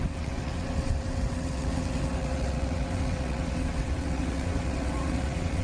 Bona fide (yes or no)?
no